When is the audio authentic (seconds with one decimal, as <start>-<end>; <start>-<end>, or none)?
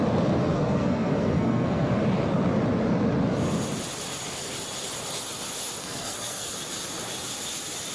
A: 0.0-0.4; 1.9-5.8; 6.5-7.9